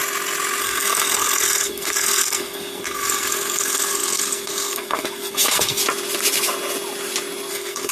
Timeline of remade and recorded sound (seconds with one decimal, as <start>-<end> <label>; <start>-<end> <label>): 0.0-0.6 recorded; 0.6-5.8 remade; 5.8-7.5 recorded; 7.5-7.9 remade